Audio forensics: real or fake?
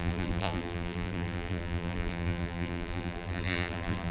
fake